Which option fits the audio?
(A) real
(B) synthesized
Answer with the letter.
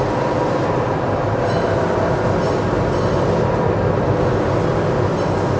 A